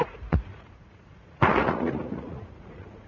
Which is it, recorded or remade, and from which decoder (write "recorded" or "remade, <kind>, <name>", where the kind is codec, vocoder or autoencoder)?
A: remade, vocoder, Vocos